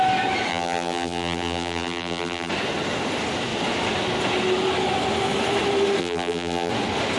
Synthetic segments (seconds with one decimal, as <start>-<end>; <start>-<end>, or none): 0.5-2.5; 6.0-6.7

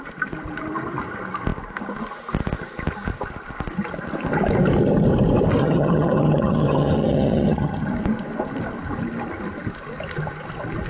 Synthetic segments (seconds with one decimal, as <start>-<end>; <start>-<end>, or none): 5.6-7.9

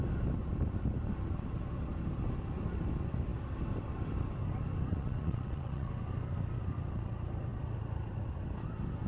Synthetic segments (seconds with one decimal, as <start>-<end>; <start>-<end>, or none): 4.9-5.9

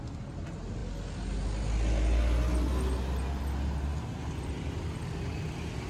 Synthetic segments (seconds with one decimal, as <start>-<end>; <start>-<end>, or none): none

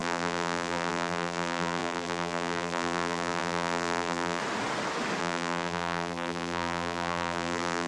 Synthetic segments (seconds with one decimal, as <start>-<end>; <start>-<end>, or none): 0.0-4.4; 5.2-7.9

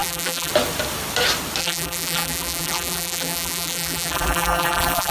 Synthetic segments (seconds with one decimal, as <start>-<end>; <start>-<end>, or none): 0.0-0.5; 1.6-5.1